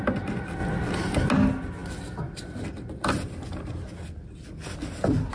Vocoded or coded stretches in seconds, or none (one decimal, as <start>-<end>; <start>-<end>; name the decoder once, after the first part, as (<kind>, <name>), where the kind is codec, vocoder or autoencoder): none